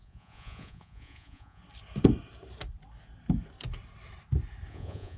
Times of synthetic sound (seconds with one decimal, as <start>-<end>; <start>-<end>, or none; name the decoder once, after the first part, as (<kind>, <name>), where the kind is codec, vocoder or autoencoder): 0.0-1.6 (vocoder, Vocos); 4.7-5.2